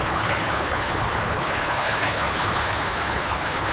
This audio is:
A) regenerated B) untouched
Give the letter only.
A